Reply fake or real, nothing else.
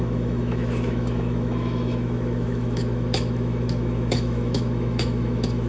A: fake